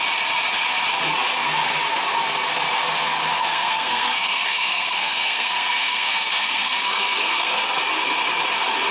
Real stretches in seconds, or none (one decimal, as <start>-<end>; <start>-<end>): 0.0-3.4; 7.6-8.9